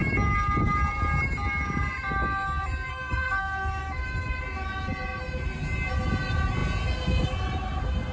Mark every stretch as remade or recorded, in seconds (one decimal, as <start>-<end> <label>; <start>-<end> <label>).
0.0-2.9 recorded; 2.9-3.8 remade; 3.8-8.1 recorded